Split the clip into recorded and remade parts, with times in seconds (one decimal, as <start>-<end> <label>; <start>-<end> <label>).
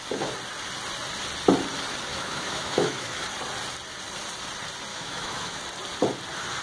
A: 0.0-2.1 recorded; 2.1-3.1 remade; 3.1-4.9 recorded; 4.9-5.6 remade; 5.6-6.6 recorded